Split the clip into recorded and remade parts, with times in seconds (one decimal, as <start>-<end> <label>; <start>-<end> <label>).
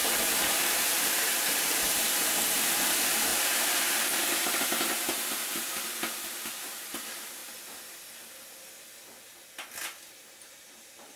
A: 0.0-7.4 remade; 7.4-10.5 recorded; 10.5-11.2 remade